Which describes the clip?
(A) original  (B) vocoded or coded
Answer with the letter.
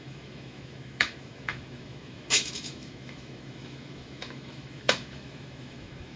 B